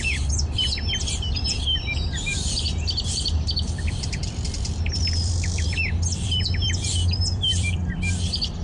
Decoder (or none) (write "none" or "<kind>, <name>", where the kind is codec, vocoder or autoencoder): vocoder, BigVGAN v2